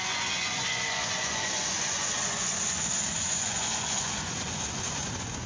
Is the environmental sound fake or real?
fake